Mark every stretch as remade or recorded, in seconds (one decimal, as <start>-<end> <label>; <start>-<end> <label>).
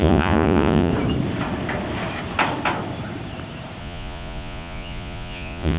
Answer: 0.0-0.9 remade; 0.9-3.8 recorded; 3.8-5.8 remade